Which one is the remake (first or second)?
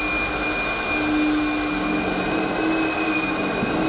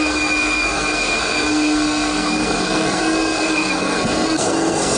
second